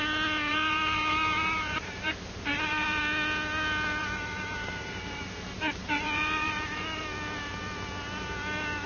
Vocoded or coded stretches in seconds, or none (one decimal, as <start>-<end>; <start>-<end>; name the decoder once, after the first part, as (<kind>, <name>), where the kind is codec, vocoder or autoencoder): 0.5-3.0 (vocoder, BigVGAN v2); 4.0-5.2; 5.8-7.0